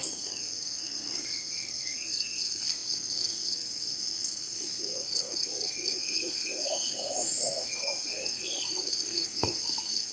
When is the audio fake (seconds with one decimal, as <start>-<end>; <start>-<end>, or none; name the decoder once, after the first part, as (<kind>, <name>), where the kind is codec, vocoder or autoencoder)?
0.0-10.1 (codec, SNAC)